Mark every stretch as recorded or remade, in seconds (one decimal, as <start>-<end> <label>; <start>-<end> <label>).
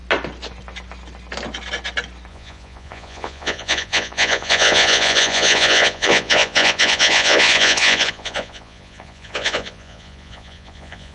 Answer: 0.0-2.3 recorded; 2.3-11.1 remade